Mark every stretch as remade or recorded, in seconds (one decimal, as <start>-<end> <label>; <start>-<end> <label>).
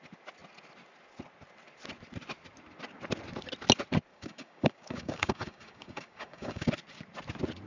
0.0-4.1 recorded; 4.1-6.7 remade; 6.7-7.7 recorded